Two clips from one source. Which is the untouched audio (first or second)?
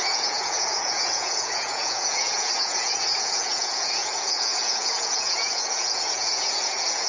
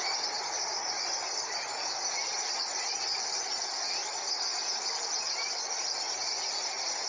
second